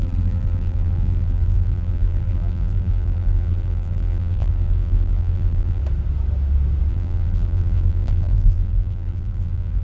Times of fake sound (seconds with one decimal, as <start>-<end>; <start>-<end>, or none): 0.0-5.8; 6.9-9.8